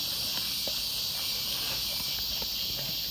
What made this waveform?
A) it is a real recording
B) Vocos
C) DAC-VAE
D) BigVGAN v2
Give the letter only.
A